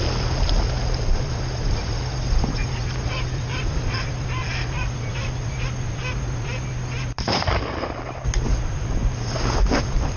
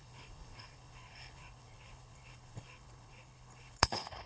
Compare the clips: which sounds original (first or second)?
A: first